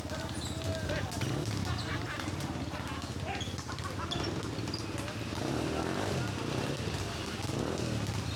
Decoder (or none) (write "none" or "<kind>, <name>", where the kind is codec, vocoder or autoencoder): none